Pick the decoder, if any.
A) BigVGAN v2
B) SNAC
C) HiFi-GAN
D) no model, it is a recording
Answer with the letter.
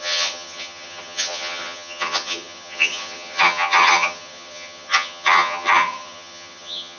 C